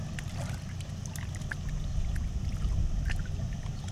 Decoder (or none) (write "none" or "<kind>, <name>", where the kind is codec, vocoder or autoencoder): none